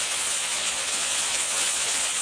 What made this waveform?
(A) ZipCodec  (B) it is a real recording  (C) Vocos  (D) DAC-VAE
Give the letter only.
C